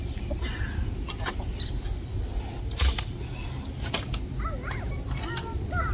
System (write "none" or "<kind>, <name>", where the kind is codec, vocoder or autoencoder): none